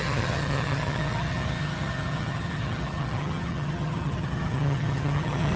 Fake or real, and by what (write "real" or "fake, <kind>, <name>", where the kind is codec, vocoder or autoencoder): fake, vocoder, HiFi-GAN